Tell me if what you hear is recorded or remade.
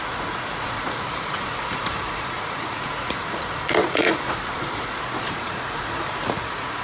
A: remade